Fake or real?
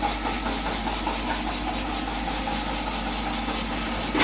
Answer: real